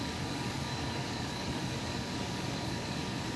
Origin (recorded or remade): remade